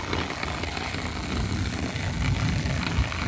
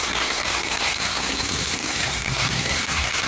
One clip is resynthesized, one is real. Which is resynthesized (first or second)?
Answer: second